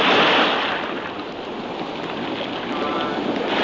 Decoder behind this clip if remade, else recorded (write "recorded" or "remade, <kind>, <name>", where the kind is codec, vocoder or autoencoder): recorded